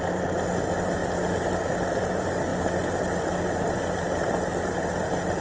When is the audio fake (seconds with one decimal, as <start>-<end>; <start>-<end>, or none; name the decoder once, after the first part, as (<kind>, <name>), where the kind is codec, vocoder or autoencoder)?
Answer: none